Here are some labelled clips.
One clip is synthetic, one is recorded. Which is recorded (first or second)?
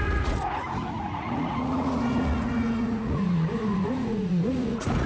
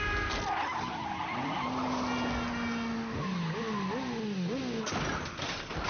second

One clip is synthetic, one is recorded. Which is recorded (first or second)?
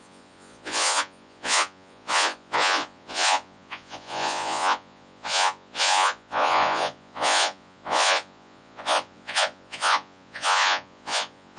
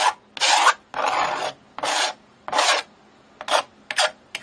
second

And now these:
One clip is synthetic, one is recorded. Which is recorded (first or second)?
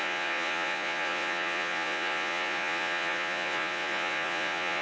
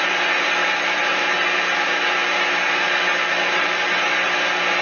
second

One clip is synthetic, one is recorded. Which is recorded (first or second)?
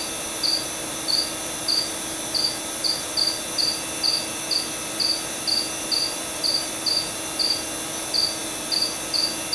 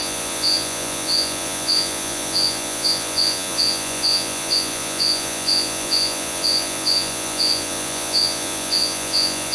first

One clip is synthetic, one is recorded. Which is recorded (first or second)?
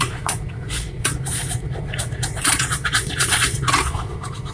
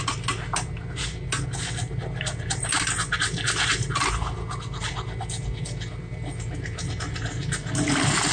second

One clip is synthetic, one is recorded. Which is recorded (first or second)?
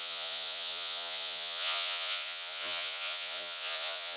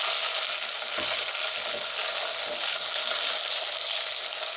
second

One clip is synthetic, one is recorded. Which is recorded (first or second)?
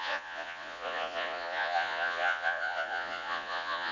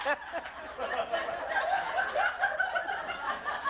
second